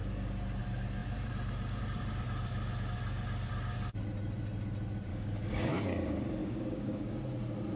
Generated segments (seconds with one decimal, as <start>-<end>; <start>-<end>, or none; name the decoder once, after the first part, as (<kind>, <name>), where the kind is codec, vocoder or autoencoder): 5.1-5.7 (codec, DAC); 6.4-7.2